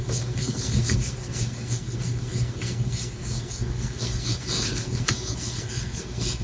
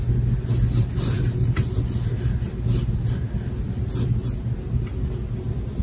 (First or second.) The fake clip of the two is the first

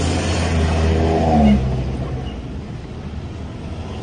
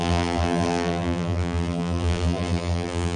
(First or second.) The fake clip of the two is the second